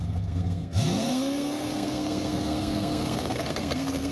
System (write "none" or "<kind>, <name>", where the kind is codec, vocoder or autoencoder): codec, SNAC